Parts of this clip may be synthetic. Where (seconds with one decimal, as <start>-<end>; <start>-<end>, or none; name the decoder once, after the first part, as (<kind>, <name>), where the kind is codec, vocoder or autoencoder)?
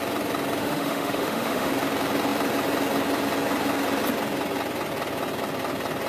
0.6-1.7 (autoencoder, DAC-VAE)